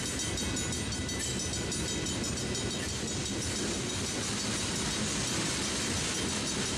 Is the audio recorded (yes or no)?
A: yes